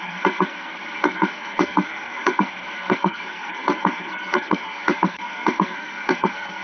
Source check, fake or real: fake